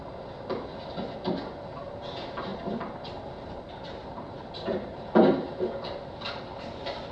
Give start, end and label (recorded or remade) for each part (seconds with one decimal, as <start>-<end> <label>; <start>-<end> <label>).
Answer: 0.0-2.5 recorded; 2.5-5.0 remade; 5.0-7.1 recorded